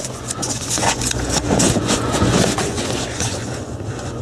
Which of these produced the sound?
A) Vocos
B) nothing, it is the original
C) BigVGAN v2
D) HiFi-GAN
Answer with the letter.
A